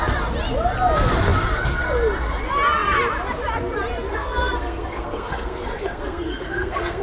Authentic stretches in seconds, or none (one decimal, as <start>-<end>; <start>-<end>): 0.0-4.1

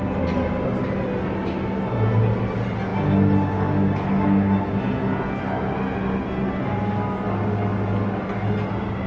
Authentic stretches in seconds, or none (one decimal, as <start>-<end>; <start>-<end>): 0.0-9.1

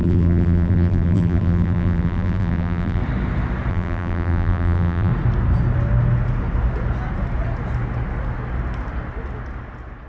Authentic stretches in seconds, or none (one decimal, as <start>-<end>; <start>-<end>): 3.0-3.7; 5.1-10.1

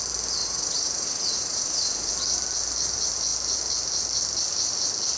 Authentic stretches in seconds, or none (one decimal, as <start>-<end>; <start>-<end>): 0.0-0.4; 2.1-5.2